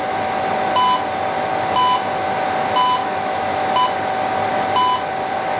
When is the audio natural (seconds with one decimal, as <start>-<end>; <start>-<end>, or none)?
0.0-3.0; 3.7-5.6